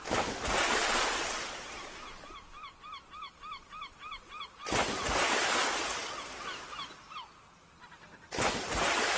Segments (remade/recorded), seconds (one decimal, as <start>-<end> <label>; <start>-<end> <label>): 0.0-9.2 recorded